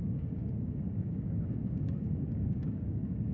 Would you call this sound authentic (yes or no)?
no